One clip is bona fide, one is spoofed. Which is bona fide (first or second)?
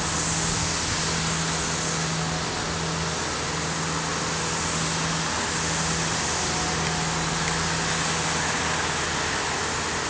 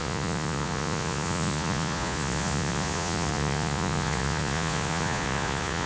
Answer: first